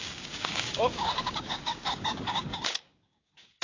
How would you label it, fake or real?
fake